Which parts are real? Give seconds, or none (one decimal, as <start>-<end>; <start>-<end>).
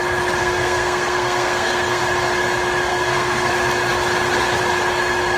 0.0-0.4; 2.0-2.9; 3.5-5.4